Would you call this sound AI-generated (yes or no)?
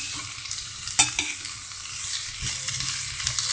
no